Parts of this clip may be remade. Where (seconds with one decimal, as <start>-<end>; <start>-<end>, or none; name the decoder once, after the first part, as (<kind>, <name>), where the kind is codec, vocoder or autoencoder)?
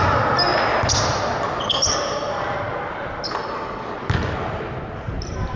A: none